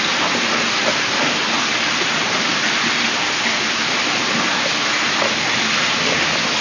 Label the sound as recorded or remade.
recorded